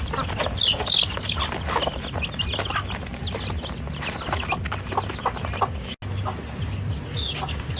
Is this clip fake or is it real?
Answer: real